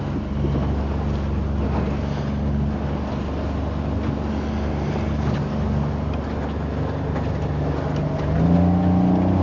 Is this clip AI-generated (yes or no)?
no